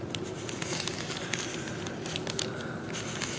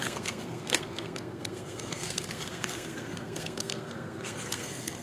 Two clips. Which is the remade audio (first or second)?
second